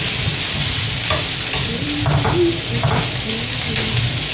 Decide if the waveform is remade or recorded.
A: recorded